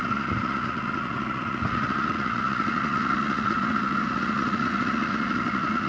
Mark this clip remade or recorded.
remade